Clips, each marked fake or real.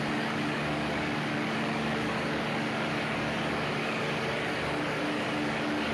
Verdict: fake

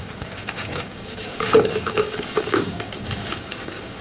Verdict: fake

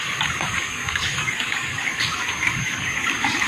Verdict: fake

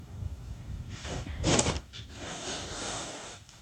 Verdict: fake